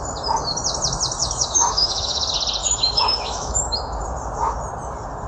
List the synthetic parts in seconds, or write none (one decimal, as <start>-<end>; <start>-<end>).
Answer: 1.2-2.2; 2.6-3.9